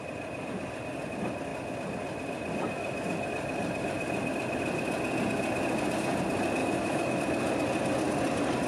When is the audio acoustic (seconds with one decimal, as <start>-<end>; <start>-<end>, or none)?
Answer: 0.0-6.6; 7.2-8.7